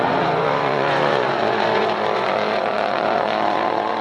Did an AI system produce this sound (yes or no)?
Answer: yes